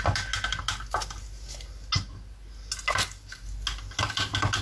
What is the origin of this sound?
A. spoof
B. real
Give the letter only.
B